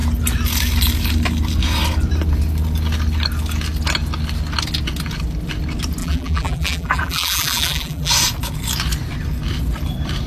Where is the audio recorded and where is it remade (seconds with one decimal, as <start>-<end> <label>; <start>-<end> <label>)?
0.0-6.0 recorded; 6.0-8.1 remade; 8.1-10.3 recorded